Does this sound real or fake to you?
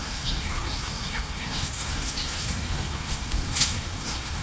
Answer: fake